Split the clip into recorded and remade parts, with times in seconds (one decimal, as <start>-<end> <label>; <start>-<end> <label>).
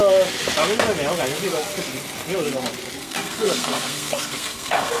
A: 0.0-3.0 recorded; 3.0-5.0 remade